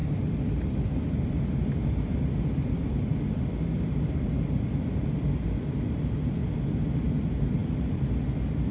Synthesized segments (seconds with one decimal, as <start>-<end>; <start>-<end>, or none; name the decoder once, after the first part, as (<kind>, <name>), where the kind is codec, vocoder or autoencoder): none